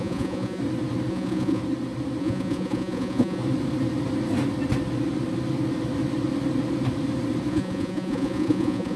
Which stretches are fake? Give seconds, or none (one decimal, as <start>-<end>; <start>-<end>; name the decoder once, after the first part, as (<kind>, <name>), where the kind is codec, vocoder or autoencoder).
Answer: 0.0-0.6 (vocoder, Vocos); 1.1-1.6; 2.2-3.4; 7.5-9.0